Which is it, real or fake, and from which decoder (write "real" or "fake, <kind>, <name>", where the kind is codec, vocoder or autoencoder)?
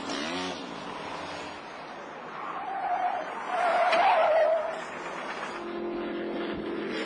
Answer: real